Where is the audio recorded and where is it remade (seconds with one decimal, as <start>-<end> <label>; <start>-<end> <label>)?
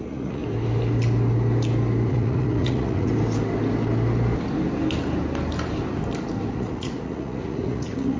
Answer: 0.0-0.4 remade; 0.4-2.1 recorded; 2.1-3.1 remade; 3.1-6.5 recorded; 6.5-8.2 remade